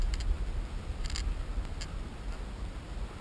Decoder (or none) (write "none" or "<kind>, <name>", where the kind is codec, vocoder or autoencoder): none